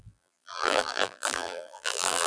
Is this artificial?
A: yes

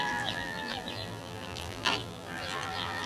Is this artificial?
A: yes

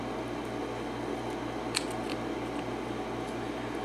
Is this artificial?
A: no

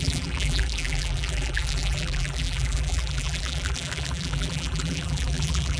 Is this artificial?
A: yes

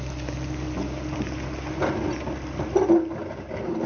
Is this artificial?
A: no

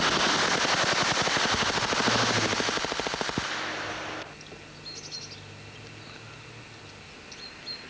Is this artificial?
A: no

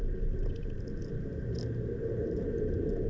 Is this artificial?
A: no